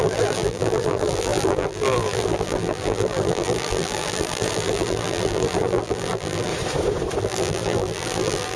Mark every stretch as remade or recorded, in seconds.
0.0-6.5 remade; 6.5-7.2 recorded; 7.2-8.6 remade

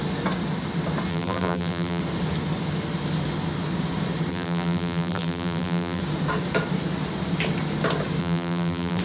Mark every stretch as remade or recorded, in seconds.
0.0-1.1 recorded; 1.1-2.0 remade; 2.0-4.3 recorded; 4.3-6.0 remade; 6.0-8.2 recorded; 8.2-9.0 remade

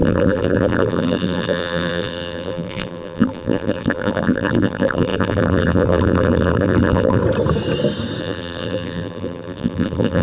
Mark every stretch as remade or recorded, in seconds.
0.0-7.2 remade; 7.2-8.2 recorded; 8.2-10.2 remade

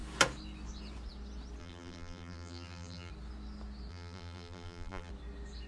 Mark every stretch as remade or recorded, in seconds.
0.0-1.6 recorded; 1.6-3.1 remade; 3.1-3.9 recorded; 3.9-5.1 remade; 5.1-5.7 recorded

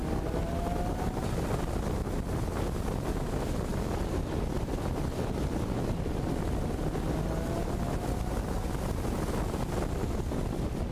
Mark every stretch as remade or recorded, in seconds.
0.0-10.9 recorded